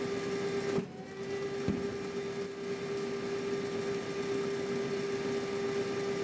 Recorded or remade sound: recorded